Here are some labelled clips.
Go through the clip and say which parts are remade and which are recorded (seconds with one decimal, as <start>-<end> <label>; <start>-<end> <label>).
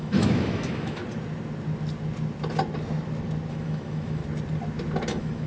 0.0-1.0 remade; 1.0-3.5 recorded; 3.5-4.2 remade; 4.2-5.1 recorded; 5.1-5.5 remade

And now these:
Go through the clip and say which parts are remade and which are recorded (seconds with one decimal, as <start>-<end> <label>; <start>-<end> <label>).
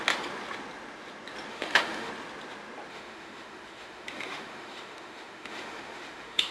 0.0-1.5 recorded; 1.5-2.1 remade; 2.1-2.9 recorded; 2.9-6.5 remade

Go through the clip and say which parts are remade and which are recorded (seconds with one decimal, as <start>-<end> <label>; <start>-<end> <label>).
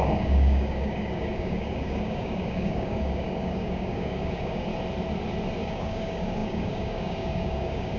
0.0-4.7 remade; 4.7-5.6 recorded; 5.6-8.0 remade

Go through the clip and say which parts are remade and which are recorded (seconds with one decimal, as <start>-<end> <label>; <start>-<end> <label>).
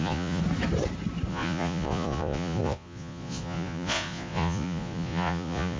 0.0-0.4 remade; 0.4-1.3 recorded; 1.3-5.8 remade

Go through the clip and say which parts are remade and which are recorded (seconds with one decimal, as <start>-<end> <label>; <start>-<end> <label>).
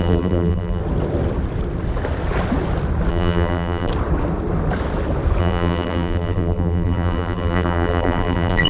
0.0-0.8 remade; 0.8-3.1 recorded; 3.1-3.9 remade; 3.9-5.4 recorded; 5.4-8.7 remade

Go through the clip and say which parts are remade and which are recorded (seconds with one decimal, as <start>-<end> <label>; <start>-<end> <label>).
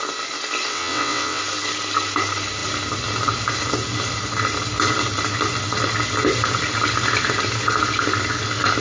0.0-0.7 recorded; 0.7-1.4 remade; 1.4-8.8 recorded